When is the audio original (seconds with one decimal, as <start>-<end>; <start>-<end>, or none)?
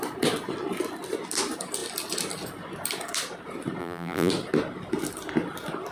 0.0-3.8; 4.3-5.9